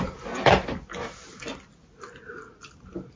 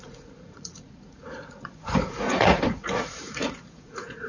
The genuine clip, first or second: first